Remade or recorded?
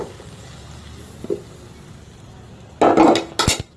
recorded